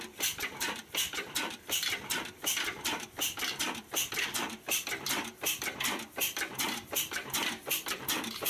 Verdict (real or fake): fake